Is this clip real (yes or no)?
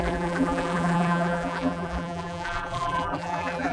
no